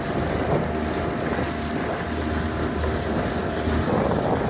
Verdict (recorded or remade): recorded